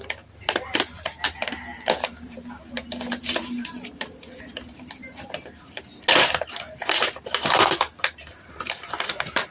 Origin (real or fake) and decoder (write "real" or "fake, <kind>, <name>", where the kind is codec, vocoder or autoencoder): fake, vocoder, BigVGAN v2